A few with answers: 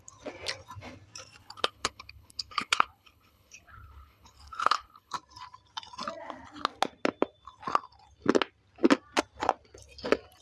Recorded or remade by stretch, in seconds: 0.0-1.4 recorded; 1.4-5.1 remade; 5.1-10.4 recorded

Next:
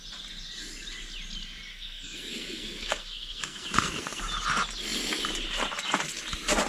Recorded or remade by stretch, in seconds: 0.0-1.7 recorded; 1.7-4.2 remade; 4.2-6.7 recorded

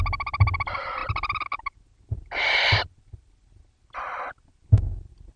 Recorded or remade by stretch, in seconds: 0.0-5.4 recorded